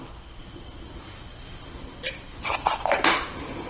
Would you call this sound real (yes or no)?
yes